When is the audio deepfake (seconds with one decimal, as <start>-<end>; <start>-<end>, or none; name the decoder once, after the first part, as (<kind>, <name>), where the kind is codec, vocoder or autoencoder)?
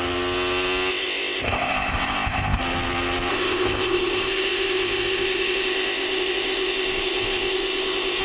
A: 0.9-2.6 (codec, ZipCodec); 3.3-8.2